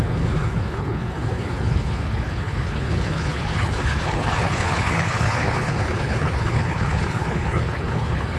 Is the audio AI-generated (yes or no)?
yes